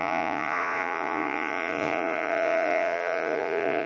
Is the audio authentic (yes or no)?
no